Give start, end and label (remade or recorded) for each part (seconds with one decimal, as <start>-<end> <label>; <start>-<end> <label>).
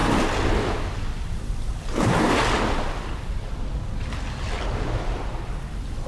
0.0-6.1 recorded